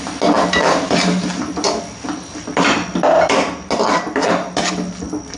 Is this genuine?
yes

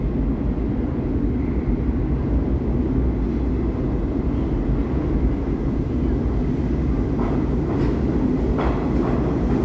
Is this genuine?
yes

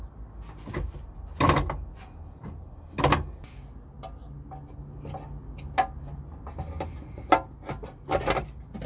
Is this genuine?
yes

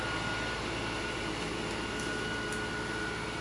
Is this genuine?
yes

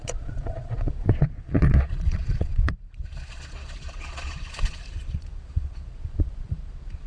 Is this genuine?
no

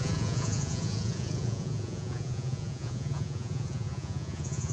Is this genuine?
no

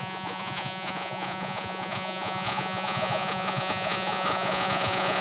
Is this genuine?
no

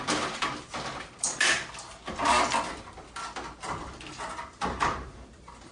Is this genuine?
yes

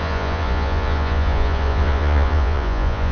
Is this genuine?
no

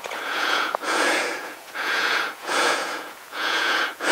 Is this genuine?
no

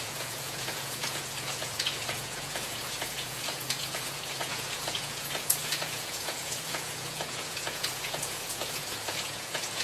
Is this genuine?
no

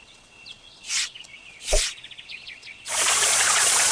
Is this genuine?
no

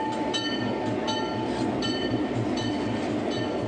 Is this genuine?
yes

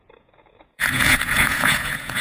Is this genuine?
no